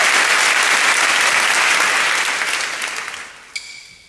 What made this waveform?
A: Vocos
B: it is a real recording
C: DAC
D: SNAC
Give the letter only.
B